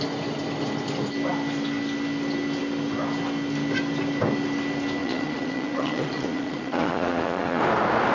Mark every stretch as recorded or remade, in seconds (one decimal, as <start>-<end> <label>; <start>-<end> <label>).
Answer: 0.0-5.0 recorded; 5.0-7.6 remade; 7.6-8.1 recorded